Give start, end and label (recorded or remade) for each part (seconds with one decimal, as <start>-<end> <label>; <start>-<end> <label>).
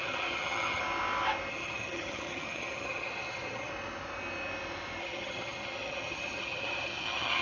0.0-0.8 remade; 0.8-1.5 recorded; 1.5-3.7 remade; 3.7-5.0 recorded; 5.0-7.4 remade